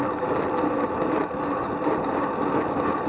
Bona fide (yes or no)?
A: yes